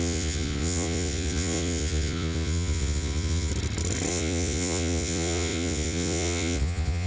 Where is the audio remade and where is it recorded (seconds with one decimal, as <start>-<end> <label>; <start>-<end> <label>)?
0.0-3.5 remade; 3.5-4.1 recorded; 4.1-7.1 remade